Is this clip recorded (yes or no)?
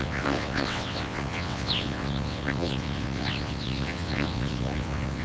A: no